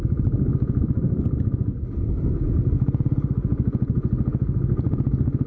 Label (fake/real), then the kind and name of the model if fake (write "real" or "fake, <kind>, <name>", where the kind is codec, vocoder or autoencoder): real